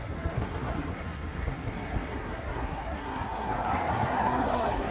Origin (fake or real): fake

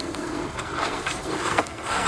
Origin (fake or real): fake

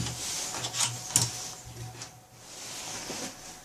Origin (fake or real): real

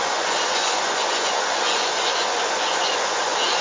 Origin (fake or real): fake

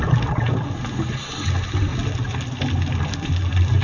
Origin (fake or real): real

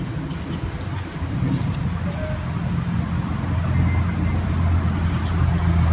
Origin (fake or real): real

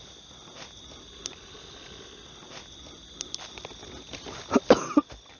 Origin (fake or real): real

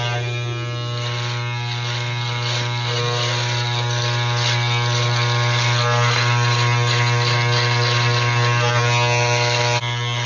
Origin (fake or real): real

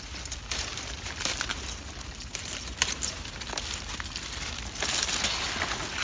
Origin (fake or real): real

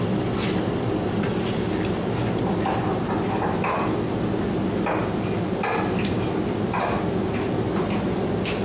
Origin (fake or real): real